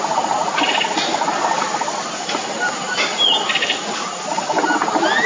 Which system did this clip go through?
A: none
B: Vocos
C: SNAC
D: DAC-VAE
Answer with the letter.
A